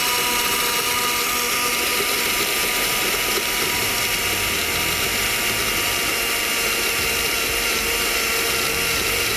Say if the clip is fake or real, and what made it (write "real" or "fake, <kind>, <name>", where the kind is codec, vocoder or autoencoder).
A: real